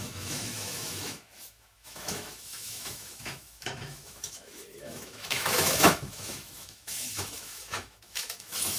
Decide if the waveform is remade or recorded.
remade